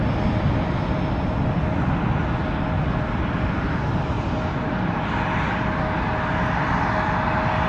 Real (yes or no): yes